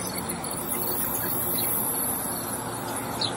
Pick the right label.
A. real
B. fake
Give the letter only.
B